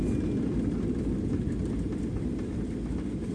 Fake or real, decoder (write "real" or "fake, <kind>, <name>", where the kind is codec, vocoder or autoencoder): real